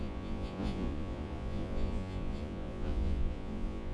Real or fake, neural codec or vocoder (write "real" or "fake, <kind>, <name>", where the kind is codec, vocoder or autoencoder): fake, vocoder, Vocos